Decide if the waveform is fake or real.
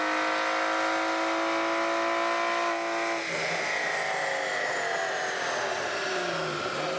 real